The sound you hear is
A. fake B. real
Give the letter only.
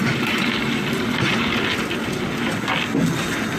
B